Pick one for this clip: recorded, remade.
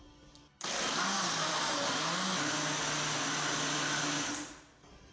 recorded